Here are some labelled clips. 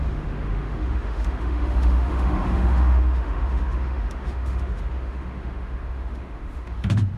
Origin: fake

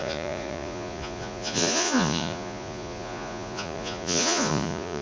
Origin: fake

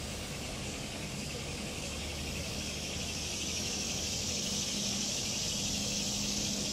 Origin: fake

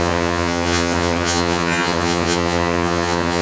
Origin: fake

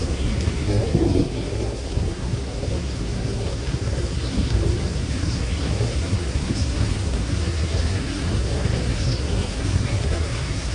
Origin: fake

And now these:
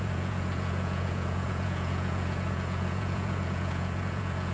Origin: fake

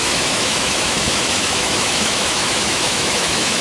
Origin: fake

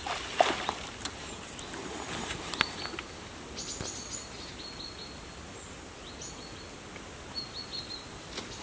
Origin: real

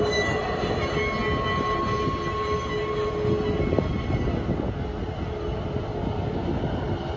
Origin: real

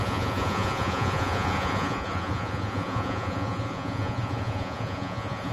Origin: fake